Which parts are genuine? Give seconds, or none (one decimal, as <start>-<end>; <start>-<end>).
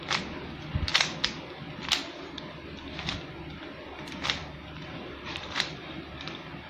0.0-4.4